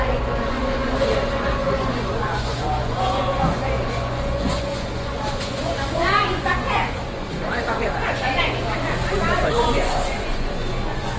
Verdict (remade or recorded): remade